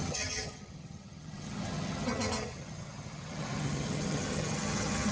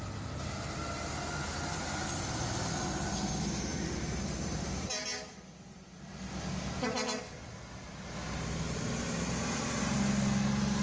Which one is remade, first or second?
first